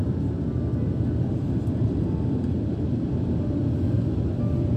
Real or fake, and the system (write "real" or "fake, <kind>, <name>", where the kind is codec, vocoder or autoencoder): real